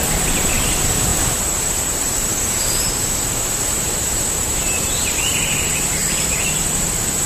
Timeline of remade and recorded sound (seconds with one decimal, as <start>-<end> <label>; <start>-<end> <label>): 0.0-6.0 remade; 6.0-6.6 recorded; 6.6-7.3 remade